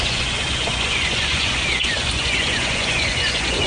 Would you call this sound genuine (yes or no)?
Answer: no